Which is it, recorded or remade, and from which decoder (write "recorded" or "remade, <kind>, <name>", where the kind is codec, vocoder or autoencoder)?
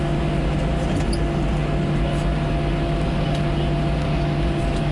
recorded